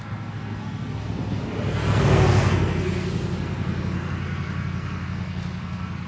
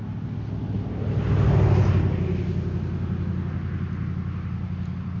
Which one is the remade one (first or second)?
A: first